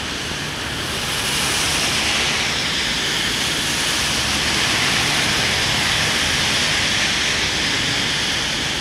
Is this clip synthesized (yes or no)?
no